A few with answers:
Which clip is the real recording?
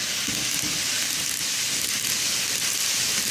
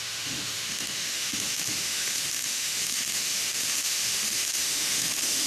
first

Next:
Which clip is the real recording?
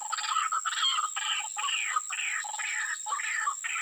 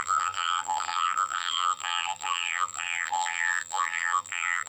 first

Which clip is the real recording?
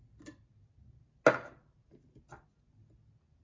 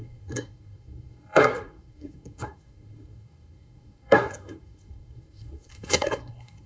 first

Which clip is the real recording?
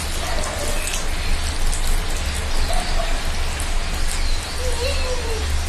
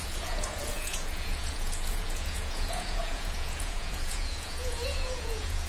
first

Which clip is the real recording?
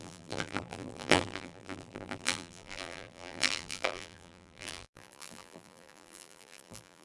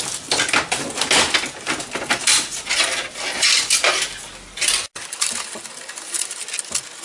second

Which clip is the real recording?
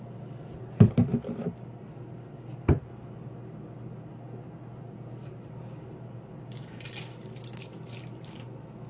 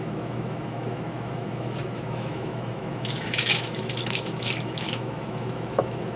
first